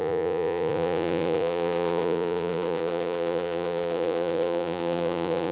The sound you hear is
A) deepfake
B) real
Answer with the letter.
A